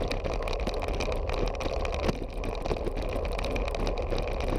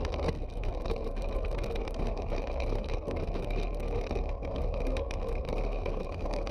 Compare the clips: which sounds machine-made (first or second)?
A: second